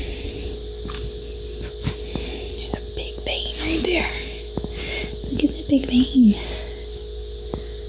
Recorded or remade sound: recorded